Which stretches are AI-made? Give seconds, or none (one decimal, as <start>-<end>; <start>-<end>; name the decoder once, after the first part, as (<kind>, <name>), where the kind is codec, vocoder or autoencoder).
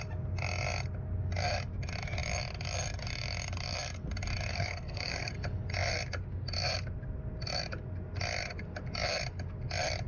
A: 4.5-5.3 (codec, SNAC)